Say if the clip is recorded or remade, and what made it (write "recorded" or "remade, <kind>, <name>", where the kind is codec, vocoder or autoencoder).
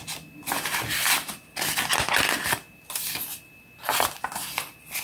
recorded